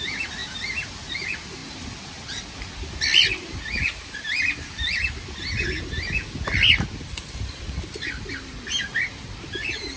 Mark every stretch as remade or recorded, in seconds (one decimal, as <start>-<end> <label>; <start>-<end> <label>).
0.0-10.0 recorded